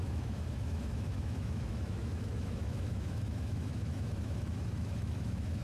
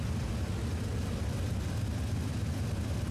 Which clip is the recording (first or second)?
second